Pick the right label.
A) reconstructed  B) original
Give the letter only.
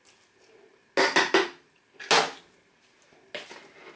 B